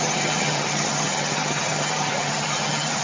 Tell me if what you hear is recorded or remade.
remade